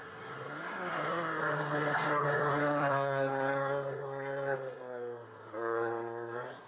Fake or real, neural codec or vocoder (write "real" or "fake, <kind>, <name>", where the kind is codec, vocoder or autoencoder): fake, codec, SNAC